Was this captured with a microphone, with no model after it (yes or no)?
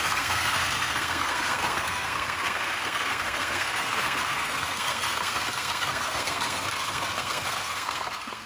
no